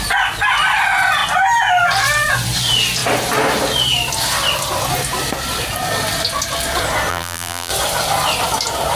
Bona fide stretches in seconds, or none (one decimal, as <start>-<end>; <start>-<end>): 0.0-7.1; 7.7-9.0